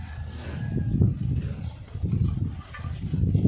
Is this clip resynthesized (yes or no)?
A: no